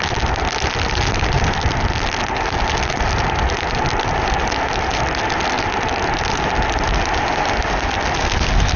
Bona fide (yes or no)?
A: yes